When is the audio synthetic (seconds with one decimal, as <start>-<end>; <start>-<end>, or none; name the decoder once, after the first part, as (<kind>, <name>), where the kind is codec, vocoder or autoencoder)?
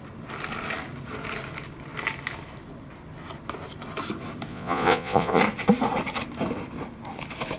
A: 4.5-5.4 (vocoder, Vocos)